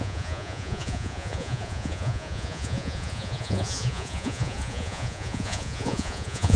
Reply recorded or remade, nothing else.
remade